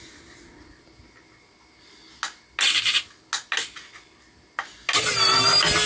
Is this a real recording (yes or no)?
yes